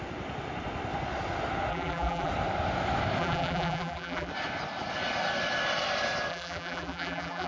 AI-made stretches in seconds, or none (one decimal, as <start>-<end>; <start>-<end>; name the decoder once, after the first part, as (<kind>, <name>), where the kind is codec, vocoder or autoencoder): 1.7-2.3 (vocoder, BigVGAN v2); 3.2-4.3; 6.3-7.5